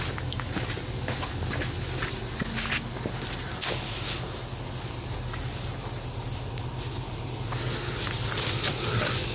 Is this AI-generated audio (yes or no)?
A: no